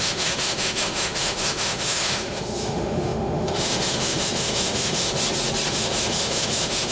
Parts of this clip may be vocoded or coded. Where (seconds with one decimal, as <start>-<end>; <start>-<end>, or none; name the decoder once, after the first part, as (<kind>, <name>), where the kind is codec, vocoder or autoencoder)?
0.0-5.1 (autoencoder, DAC-VAE); 5.7-6.9